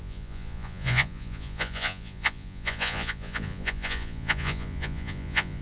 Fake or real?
fake